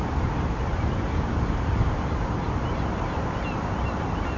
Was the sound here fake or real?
fake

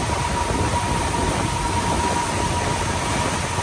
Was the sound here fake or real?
real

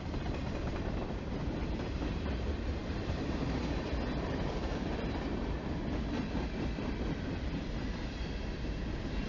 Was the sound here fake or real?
fake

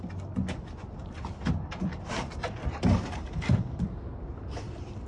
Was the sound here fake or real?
real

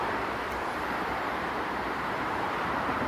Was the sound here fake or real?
fake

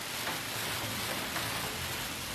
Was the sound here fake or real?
fake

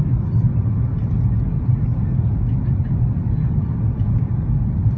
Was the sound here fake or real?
real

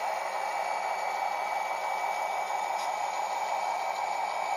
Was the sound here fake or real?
real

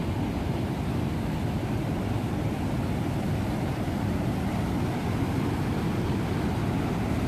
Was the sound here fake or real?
real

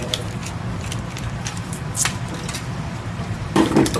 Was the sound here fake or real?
fake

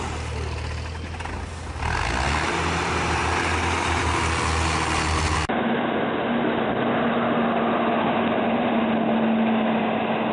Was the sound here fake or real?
real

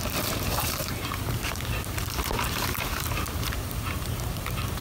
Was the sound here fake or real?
fake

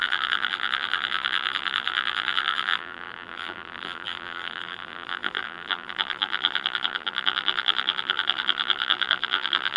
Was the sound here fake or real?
fake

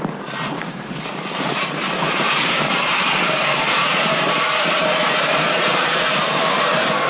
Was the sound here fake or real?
fake